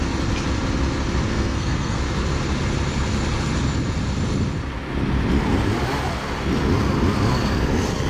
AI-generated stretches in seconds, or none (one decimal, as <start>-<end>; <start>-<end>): 1.3-2.0